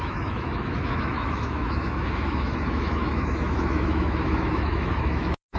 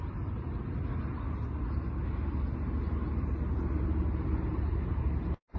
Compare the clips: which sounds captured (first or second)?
second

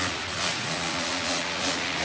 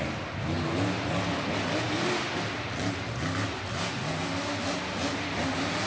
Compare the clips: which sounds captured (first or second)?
second